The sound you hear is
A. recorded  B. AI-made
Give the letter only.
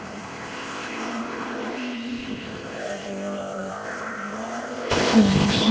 B